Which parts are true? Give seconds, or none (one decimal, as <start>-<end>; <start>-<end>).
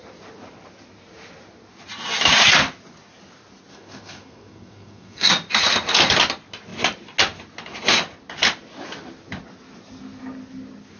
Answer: 0.0-3.7; 5.3-11.0